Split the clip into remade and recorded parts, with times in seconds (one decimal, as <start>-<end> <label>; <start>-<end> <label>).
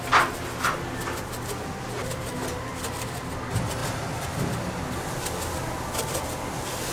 0.0-6.9 recorded